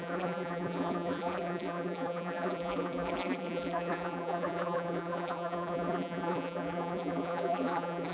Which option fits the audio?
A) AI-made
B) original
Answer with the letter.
A